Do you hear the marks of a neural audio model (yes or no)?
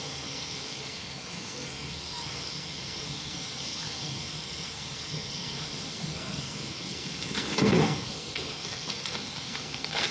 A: yes